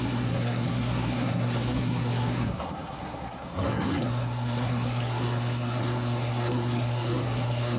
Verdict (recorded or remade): remade